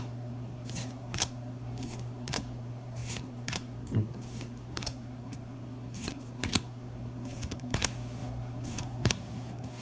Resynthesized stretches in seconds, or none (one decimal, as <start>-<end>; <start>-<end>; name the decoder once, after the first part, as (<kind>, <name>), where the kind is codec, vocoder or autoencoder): 0.0-9.8 (codec, SNAC)